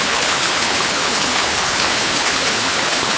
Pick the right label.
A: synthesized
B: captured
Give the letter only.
A